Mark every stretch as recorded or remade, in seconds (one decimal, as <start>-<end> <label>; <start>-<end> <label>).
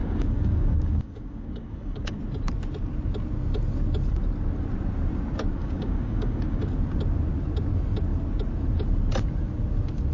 0.0-2.2 remade; 2.2-5.6 recorded; 5.6-6.7 remade; 6.7-10.1 recorded